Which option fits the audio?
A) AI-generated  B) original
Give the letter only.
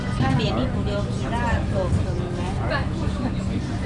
B